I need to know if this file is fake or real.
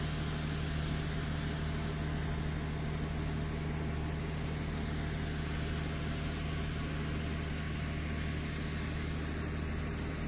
real